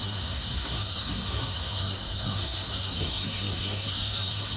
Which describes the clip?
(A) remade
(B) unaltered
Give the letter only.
A